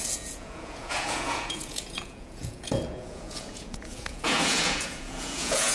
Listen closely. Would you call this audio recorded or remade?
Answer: remade